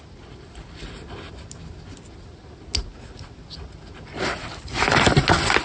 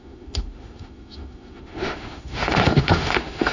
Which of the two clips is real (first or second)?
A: first